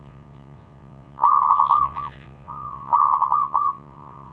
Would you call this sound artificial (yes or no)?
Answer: yes